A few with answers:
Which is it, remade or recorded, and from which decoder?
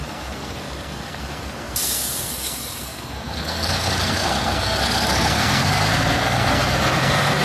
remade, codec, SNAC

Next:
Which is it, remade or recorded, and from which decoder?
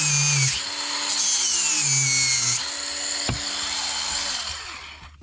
recorded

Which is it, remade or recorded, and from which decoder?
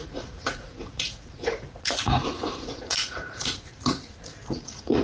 remade, vocoder, Vocos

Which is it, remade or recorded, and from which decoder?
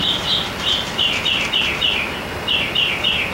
recorded